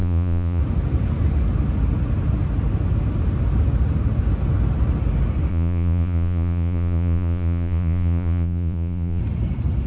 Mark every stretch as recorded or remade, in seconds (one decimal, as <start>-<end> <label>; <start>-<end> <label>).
0.0-0.6 remade; 0.6-5.5 recorded; 5.5-9.2 remade; 9.2-9.9 recorded